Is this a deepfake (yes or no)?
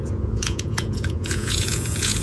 yes